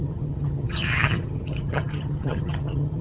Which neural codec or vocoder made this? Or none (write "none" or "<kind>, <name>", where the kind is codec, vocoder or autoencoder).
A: vocoder, HiFi-GAN